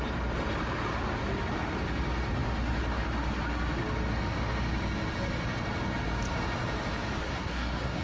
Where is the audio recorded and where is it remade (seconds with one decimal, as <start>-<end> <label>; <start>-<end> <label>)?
0.0-7.2 recorded; 7.2-8.0 remade